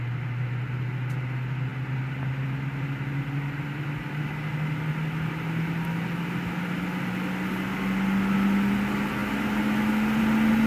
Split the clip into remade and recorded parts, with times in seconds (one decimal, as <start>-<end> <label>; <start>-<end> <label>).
0.0-10.7 recorded